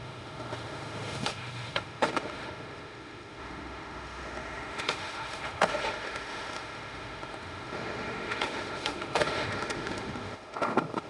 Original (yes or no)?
no